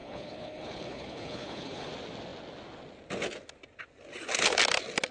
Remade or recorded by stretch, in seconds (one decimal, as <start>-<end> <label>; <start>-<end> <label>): 0.0-1.9 remade; 1.9-5.1 recorded